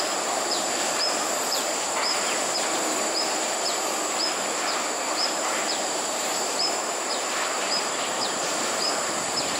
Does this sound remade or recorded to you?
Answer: remade